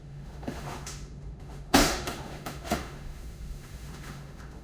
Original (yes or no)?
no